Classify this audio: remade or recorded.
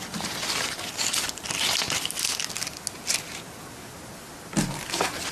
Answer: recorded